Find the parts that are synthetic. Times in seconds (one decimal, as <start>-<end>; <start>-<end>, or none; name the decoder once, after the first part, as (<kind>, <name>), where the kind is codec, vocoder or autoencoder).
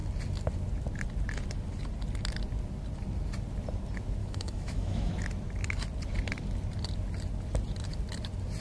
4.2-5.1 (autoencoder, DAC-VAE)